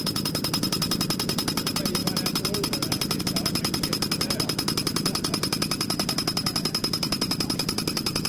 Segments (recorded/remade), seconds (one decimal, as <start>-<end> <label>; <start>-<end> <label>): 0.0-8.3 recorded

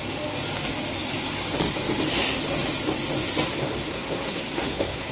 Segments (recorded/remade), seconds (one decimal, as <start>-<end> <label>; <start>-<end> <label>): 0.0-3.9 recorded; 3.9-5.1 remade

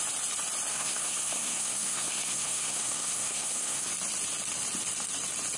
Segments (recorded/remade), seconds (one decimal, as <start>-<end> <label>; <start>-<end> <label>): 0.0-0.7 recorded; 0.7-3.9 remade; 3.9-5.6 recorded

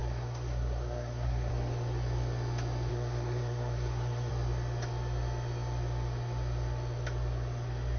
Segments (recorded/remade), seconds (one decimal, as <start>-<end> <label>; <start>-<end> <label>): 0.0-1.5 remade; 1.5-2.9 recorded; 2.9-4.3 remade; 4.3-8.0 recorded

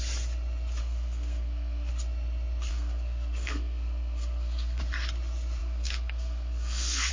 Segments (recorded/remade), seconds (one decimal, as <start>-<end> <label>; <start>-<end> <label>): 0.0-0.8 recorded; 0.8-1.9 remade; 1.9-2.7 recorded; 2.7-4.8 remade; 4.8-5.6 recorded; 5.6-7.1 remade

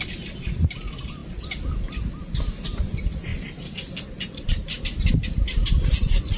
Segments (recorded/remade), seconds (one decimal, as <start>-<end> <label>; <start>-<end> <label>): 0.0-6.4 recorded

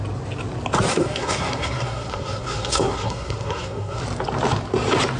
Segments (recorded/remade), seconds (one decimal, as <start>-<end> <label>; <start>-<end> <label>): 0.0-0.9 recorded; 0.9-4.0 remade; 4.0-5.2 recorded